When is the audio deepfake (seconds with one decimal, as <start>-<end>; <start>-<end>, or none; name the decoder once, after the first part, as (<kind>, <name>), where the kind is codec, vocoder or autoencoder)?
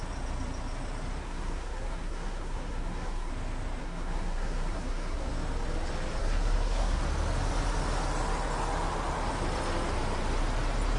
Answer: 1.2-3.3 (codec, SNAC); 3.8-5.3; 6.2-7.0